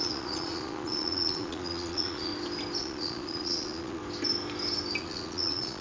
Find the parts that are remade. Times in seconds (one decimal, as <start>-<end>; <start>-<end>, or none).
0.0-2.3; 2.8-4.0; 5.0-5.8